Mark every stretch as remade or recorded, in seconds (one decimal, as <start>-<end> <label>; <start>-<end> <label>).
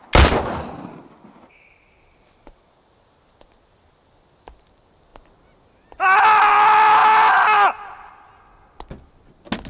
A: 0.0-9.7 recorded